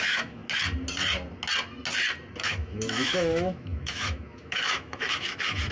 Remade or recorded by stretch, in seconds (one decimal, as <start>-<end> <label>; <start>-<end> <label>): 0.0-0.4 remade; 0.4-2.4 recorded; 2.4-5.7 remade